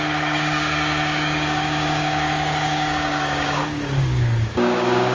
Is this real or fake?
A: fake